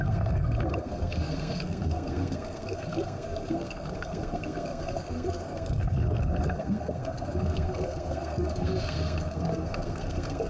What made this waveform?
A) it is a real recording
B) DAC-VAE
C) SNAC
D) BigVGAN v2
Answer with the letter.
C